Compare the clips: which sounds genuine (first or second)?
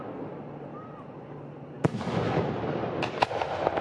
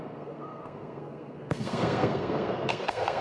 first